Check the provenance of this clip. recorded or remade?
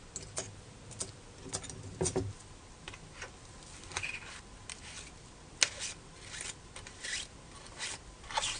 recorded